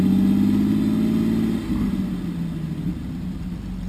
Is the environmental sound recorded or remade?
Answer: recorded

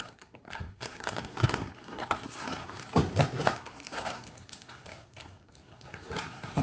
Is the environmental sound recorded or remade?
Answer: remade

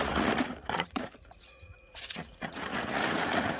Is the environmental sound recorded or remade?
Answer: remade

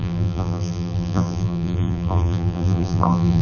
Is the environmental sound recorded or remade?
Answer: remade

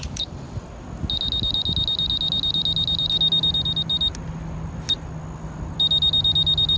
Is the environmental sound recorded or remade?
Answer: recorded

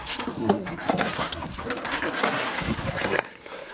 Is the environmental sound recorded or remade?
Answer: remade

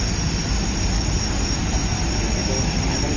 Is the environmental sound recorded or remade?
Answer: recorded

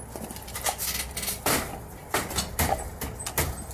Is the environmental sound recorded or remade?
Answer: recorded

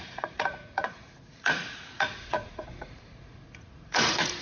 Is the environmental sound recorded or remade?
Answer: remade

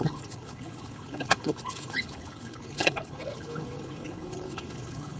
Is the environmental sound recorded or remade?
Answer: remade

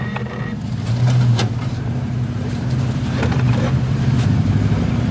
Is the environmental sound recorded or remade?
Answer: remade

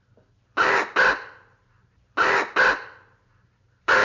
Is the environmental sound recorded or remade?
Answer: recorded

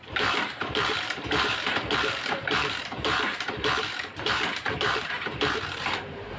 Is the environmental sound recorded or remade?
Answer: remade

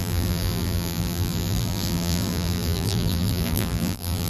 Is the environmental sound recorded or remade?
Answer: remade